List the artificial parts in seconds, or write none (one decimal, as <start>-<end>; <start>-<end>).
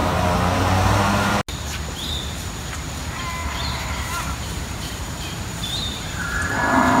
0.0-1.3; 3.4-7.0